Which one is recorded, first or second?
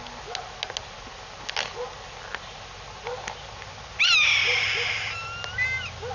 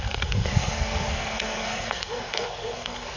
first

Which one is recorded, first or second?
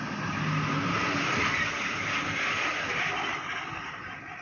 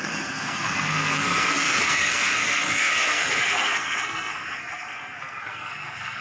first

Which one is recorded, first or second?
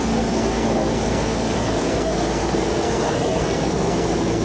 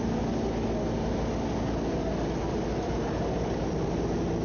second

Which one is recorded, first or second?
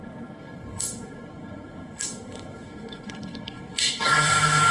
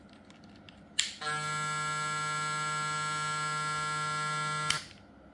second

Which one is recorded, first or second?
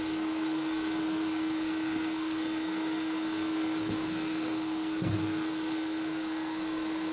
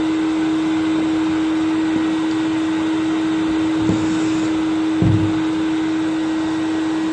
second